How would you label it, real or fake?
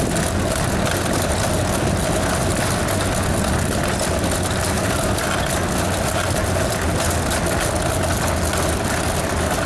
real